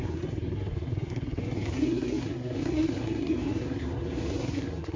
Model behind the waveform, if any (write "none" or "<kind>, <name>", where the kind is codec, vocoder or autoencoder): codec, SNAC